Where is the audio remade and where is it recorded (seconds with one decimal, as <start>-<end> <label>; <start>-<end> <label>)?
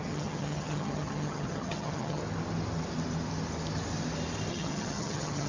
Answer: 0.0-2.2 remade; 2.2-4.5 recorded; 4.5-5.5 remade